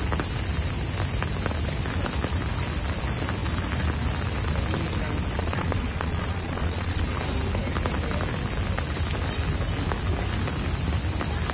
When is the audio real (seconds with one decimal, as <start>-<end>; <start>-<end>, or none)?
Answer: 0.0-5.4; 7.0-11.5